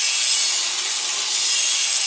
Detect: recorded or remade recorded